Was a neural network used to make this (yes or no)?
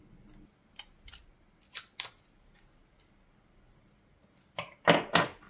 no